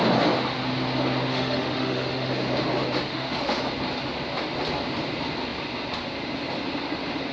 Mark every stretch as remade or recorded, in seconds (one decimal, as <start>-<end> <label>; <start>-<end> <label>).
0.0-1.3 recorded; 1.3-2.3 remade; 2.3-3.1 recorded; 3.1-3.6 remade; 3.6-7.3 recorded